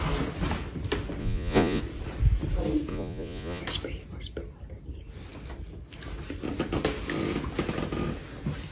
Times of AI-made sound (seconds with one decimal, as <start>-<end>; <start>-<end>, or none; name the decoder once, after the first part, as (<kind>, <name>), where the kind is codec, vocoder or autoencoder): 1.2-1.8 (vocoder, Vocos); 2.9-3.6